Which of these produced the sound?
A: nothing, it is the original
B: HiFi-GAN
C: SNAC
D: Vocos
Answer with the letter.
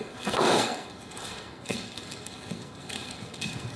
C